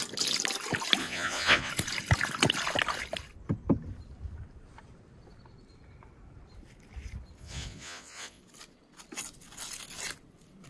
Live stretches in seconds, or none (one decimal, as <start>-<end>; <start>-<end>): 0.0-1.0; 1.7-7.4; 8.4-10.7